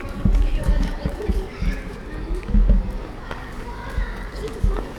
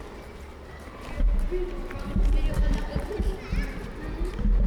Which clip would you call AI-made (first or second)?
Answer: first